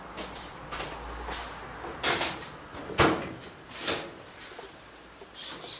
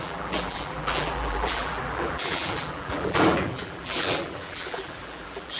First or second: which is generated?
second